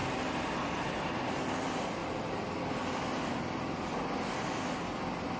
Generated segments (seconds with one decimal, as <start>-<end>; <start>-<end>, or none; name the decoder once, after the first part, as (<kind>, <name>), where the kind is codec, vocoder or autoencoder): 0.9-2.0 (vocoder, BigVGAN v2)